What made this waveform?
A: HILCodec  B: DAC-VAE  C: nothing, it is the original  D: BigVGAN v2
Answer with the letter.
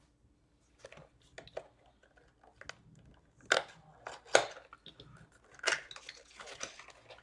C